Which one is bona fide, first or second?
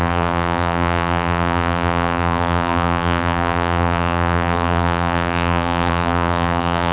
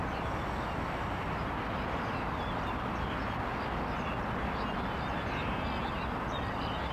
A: second